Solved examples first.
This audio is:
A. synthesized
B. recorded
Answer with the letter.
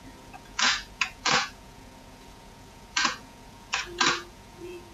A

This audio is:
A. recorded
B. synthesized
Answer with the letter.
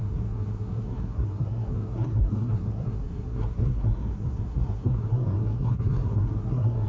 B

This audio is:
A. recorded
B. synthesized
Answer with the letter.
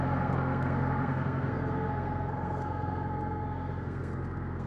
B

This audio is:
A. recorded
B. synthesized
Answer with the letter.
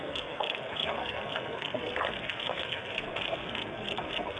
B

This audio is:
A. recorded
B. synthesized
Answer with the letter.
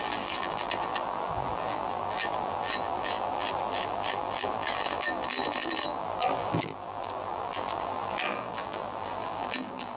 B